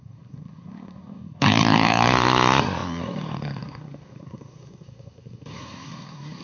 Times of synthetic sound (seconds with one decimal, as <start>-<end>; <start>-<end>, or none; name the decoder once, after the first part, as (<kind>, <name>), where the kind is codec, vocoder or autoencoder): 0.0-6.4 (codec, SNAC)